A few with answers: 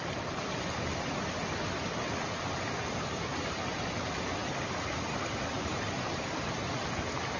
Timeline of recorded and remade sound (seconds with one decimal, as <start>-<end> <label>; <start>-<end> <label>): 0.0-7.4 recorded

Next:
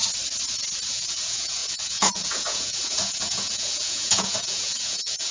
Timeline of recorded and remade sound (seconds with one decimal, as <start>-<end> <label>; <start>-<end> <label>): 0.0-0.9 recorded; 0.9-5.3 remade

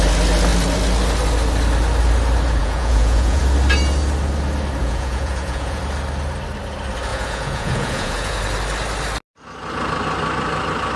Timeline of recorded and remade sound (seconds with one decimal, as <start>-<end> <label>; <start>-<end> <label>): 0.0-2.6 recorded; 2.6-3.4 remade; 3.4-4.8 recorded; 4.8-5.8 remade; 5.8-7.1 recorded; 7.1-8.4 remade; 8.4-11.0 recorded

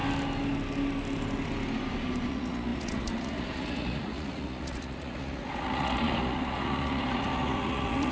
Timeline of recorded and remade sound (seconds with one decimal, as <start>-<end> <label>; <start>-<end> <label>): 0.0-2.3 recorded; 2.3-8.1 remade

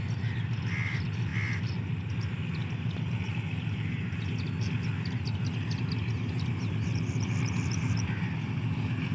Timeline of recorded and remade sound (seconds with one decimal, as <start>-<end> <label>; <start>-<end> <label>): 0.0-9.1 recorded

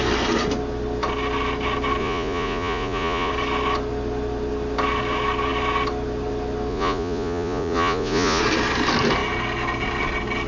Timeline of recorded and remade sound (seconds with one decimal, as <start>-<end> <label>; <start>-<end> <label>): 0.0-2.0 recorded; 2.0-3.3 remade; 3.3-6.7 recorded; 6.7-8.4 remade; 8.4-10.5 recorded